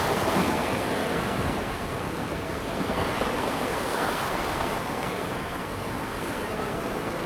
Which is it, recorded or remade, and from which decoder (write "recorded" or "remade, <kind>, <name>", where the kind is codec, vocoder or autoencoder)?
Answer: remade, codec, SNAC